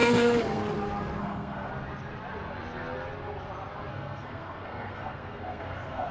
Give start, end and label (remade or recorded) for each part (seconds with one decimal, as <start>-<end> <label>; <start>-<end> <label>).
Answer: 0.0-0.6 remade; 0.6-1.2 recorded; 1.2-1.7 remade; 1.7-3.9 recorded; 3.9-6.1 remade